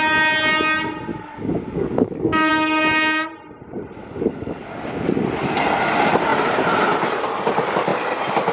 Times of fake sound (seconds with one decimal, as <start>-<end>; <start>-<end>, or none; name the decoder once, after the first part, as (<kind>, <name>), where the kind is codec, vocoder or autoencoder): 1.1-2.5 (codec, DAC); 4.0-4.7